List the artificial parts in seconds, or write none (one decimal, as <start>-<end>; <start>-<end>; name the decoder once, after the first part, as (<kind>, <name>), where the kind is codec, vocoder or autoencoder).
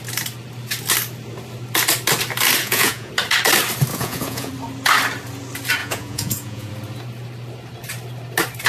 2.6-3.1 (vocoder, Vocos); 3.9-4.5; 5.8-6.7